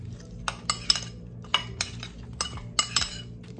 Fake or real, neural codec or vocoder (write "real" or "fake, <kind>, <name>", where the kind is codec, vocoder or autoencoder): real